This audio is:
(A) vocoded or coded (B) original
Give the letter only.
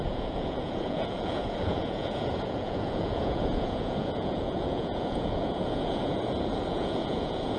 A